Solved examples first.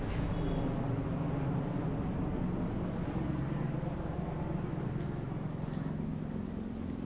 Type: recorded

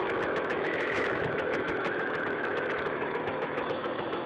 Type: remade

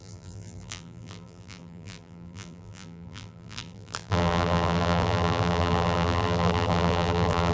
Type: remade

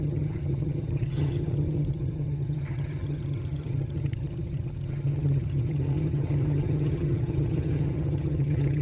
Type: remade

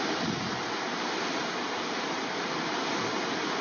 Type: recorded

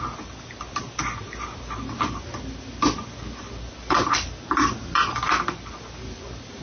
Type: recorded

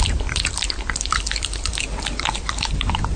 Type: remade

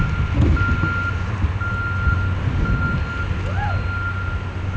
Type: recorded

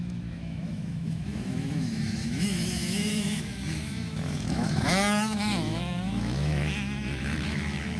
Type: remade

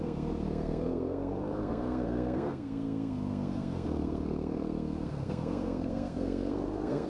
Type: remade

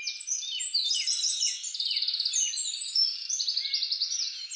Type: recorded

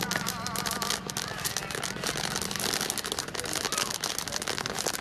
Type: recorded